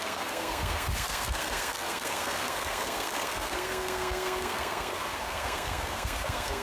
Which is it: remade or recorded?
remade